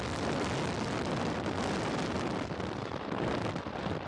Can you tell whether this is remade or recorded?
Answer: remade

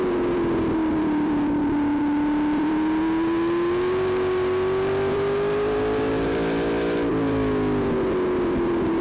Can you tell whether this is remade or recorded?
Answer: remade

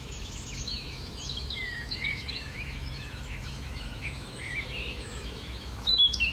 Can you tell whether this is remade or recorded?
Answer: remade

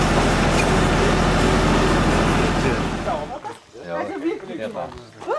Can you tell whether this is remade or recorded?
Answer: recorded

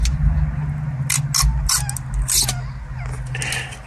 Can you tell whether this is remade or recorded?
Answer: recorded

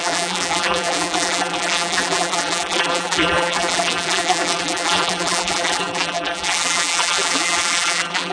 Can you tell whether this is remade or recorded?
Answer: remade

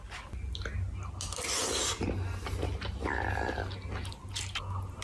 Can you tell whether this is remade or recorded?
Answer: recorded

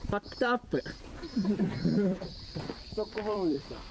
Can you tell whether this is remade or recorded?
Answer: remade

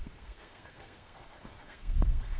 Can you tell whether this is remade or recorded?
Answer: remade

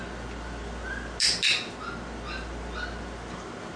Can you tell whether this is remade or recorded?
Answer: recorded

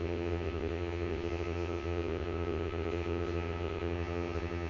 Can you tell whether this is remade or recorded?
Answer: remade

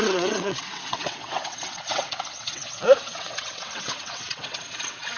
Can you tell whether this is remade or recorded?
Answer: remade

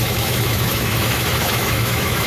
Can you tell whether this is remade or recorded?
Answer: remade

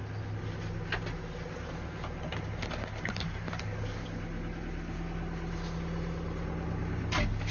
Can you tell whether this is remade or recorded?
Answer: recorded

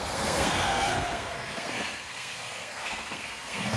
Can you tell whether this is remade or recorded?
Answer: remade